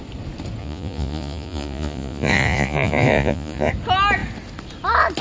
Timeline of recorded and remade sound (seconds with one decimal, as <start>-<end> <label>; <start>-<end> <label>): 0.0-0.6 recorded; 0.6-3.7 remade; 3.7-5.2 recorded